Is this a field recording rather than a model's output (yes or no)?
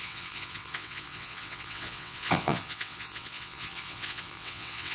no